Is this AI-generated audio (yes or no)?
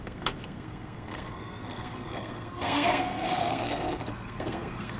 yes